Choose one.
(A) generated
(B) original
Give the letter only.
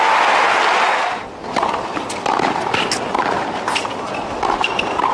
B